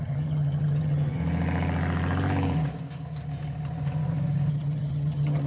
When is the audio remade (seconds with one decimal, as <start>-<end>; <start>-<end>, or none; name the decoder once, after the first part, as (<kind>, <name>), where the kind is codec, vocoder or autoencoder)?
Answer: 0.0-1.2 (vocoder, HiFi-GAN); 4.5-5.5